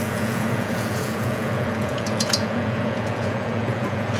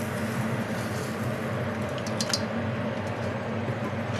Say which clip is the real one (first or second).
second